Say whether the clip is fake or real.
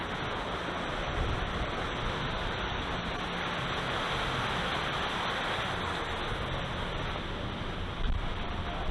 real